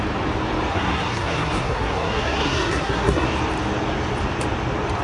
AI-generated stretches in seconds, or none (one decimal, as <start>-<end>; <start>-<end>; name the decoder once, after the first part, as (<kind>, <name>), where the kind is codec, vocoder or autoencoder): 0.7-3.3 (codec, SNAC)